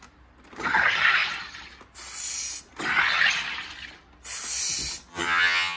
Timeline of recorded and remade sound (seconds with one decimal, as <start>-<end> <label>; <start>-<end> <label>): 0.0-5.1 recorded; 5.1-5.8 remade